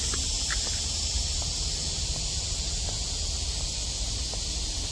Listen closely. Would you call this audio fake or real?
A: real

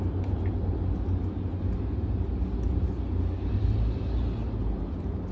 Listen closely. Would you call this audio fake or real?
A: real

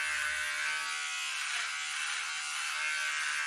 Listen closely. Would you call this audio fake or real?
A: real